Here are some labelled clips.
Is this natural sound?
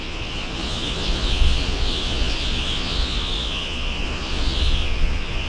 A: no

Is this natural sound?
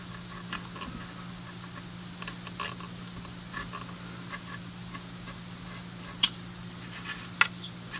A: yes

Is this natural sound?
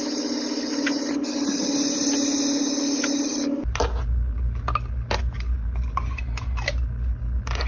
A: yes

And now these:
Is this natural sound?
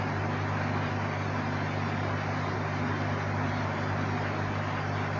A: yes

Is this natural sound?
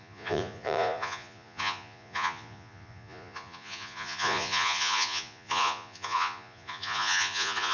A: no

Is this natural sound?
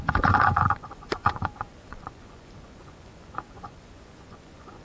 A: no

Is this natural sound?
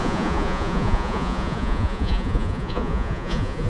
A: no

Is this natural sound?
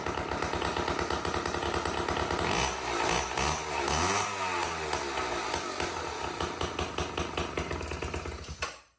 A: yes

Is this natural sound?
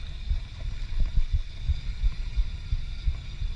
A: yes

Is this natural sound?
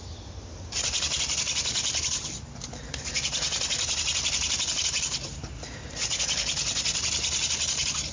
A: yes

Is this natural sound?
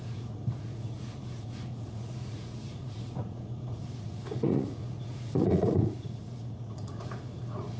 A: no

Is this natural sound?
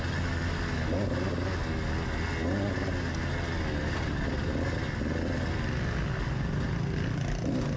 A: yes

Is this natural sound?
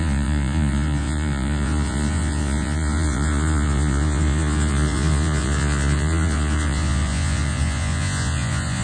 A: no